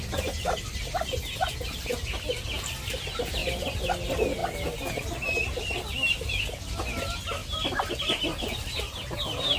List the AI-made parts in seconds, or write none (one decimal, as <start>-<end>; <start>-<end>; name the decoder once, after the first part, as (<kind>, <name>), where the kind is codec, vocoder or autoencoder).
none